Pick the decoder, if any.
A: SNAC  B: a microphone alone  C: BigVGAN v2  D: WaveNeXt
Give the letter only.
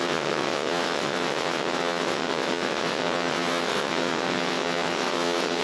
D